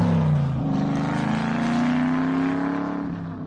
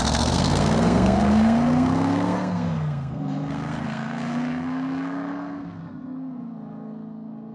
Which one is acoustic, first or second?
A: first